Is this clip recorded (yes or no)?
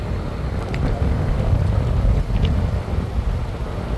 yes